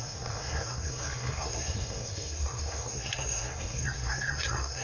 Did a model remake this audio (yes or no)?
yes